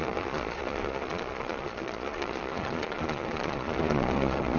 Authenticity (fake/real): fake